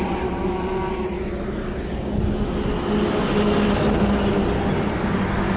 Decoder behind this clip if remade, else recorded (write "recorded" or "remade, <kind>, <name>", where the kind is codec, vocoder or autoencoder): recorded